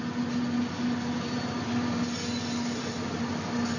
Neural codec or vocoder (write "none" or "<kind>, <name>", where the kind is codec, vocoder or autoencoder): none